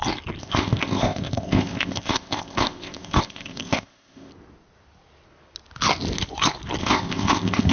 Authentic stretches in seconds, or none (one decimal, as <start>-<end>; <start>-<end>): 0.0-0.4; 4.3-6.8